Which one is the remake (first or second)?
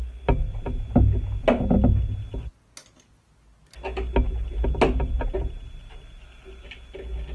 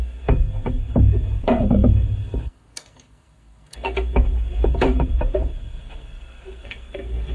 second